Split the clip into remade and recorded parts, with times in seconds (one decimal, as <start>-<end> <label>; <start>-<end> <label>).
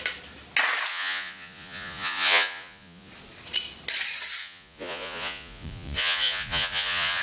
0.0-0.9 recorded; 0.9-3.1 remade; 3.1-4.4 recorded; 4.4-7.2 remade